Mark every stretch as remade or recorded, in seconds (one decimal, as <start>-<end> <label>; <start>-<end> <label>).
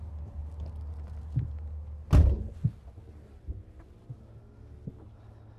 0.0-5.6 recorded